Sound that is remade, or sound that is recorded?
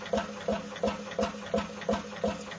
recorded